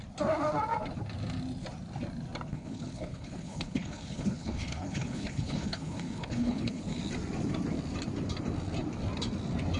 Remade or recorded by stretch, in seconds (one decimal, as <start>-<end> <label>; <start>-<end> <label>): 0.0-2.5 recorded; 2.5-7.0 remade; 7.0-9.8 recorded